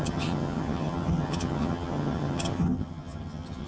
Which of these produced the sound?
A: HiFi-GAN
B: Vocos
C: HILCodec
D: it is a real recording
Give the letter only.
A